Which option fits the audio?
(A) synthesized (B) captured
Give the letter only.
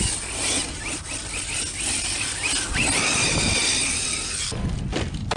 B